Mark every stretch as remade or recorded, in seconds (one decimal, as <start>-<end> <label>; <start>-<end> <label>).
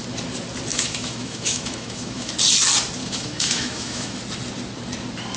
0.0-0.7 recorded; 0.7-2.3 remade; 2.3-3.0 recorded; 3.0-4.2 remade; 4.2-5.4 recorded